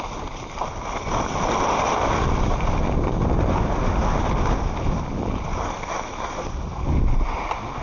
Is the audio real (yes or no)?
yes